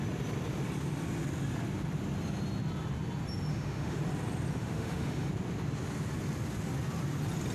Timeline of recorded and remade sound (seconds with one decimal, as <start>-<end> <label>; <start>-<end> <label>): 0.0-3.5 recorded; 3.5-4.0 remade; 4.0-4.6 recorded; 4.6-5.3 remade; 5.3-7.5 recorded